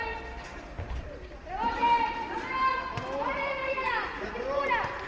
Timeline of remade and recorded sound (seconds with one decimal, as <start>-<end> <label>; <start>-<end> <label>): 0.0-1.8 recorded; 1.8-3.0 remade; 3.0-3.6 recorded; 3.6-4.3 remade; 4.3-5.1 recorded